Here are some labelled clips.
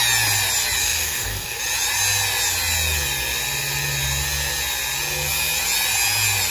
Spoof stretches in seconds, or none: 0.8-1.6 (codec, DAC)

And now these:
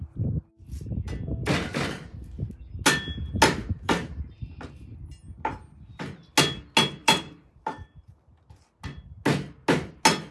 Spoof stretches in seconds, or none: 3.6-4.5 (vocoder, BigVGAN v2); 7.0-8.1

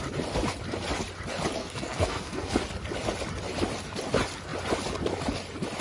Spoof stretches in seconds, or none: 1.6-2.6 (codec, SNAC)